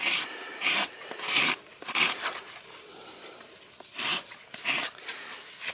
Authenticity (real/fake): fake